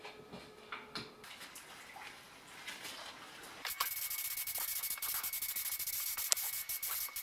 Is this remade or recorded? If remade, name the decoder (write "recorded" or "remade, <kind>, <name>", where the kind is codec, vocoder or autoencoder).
recorded